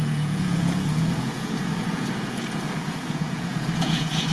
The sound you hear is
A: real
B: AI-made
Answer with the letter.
B